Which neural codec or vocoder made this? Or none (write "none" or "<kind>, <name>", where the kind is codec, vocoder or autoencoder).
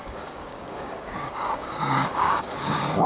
codec, DAC